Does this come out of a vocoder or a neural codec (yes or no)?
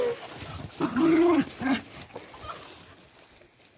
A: no